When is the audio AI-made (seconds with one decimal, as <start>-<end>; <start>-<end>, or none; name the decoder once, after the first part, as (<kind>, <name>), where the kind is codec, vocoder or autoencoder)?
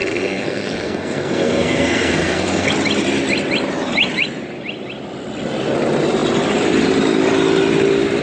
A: 0.0-2.7 (codec, SNAC)